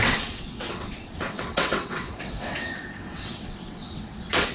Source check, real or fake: fake